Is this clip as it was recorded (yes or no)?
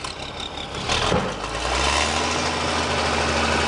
yes